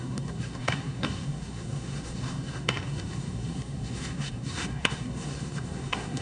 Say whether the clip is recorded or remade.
remade